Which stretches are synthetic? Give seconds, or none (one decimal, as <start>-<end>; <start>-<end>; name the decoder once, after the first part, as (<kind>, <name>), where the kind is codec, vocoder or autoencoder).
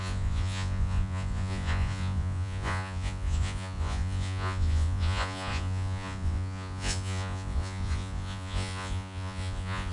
0.0-9.9 (vocoder, Vocos)